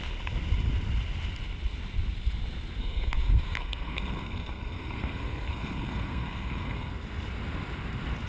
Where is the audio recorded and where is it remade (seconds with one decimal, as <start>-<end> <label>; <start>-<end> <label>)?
0.0-2.8 recorded; 2.8-6.9 remade; 6.9-8.3 recorded